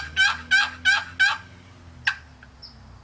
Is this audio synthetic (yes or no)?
no